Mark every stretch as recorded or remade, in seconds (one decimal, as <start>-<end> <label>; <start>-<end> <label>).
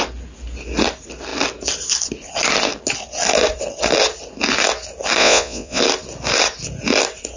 0.0-5.2 recorded; 5.2-5.8 remade; 5.8-7.4 recorded